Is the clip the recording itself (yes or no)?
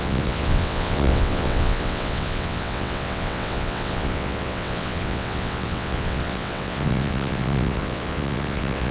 no